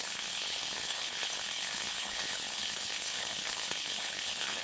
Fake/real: fake